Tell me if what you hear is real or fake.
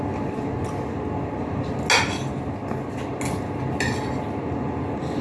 real